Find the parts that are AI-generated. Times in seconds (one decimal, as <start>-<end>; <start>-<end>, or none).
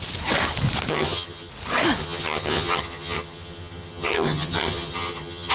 0.9-1.5; 2.0-5.5